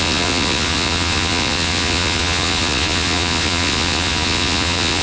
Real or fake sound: fake